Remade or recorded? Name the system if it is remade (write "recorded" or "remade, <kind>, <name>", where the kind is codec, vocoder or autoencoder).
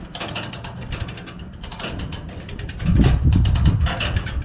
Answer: recorded